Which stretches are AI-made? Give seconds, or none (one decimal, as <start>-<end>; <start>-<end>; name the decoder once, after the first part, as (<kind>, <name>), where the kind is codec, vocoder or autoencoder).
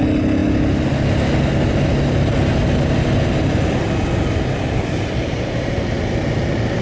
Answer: none